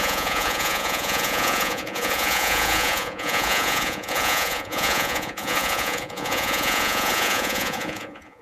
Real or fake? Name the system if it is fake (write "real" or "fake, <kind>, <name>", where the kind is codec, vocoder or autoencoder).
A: fake, vocoder, Vocos